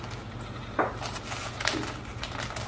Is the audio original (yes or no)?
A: yes